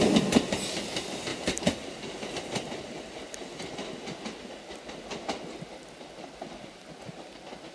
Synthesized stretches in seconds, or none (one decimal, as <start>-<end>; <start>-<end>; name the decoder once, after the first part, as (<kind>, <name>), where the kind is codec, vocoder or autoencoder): none